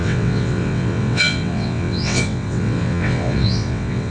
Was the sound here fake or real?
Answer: fake